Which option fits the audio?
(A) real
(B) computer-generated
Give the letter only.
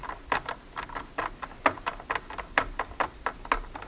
A